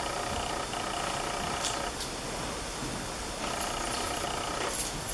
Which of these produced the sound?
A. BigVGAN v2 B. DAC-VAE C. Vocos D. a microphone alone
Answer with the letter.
D